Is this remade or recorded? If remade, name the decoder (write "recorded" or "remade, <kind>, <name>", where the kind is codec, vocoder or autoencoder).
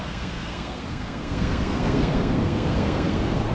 remade, codec, SNAC